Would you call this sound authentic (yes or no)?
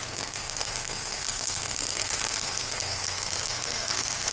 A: no